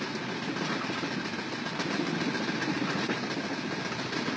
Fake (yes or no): no